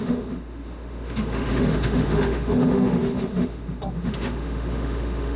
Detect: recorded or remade remade